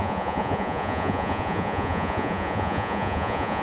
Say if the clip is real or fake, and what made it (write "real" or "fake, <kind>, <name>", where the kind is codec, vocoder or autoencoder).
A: fake, vocoder, Vocos